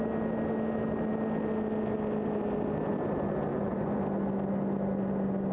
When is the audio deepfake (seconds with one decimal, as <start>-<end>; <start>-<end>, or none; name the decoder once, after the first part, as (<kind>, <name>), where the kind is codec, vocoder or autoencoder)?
3.5-4.0 (vocoder, Vocos)